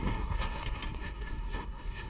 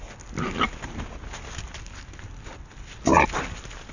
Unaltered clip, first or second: second